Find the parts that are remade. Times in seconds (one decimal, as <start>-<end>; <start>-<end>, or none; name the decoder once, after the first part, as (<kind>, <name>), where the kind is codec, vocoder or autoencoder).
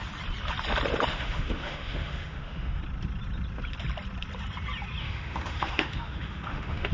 1.1-2.8 (autoencoder, DAC-VAE); 5.0-6.9